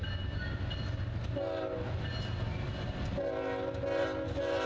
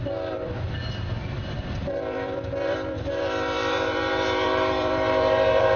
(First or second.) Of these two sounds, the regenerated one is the second